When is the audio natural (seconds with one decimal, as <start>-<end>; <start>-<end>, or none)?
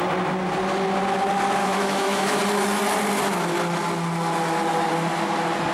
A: 0.0-1.6; 2.4-5.7